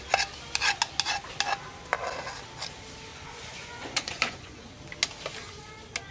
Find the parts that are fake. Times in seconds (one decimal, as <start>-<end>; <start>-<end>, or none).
3.1-4.6